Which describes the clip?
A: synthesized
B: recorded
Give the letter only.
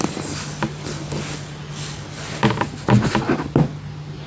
B